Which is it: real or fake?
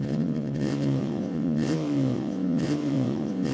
fake